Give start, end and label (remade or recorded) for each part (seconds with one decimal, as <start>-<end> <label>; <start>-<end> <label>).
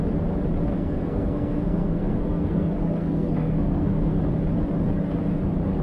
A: 0.0-0.7 recorded; 0.7-4.2 remade; 4.2-5.8 recorded